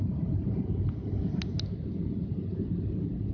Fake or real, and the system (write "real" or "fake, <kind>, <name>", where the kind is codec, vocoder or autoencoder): real